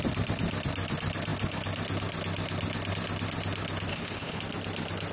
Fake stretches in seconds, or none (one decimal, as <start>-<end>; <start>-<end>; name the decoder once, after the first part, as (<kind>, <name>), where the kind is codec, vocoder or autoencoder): 3.9-4.4 (codec, HILCodec)